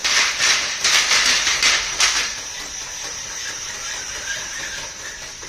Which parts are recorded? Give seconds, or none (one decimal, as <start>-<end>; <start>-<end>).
0.0-0.7

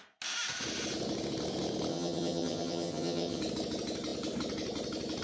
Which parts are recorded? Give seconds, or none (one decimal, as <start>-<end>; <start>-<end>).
0.0-1.9; 3.4-5.2

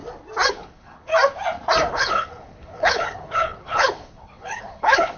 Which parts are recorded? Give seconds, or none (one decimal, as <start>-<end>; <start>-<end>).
0.0-0.5; 1.1-1.9

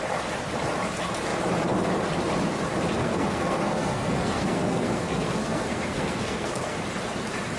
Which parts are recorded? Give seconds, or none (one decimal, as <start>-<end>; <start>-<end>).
0.0-3.0; 6.8-7.6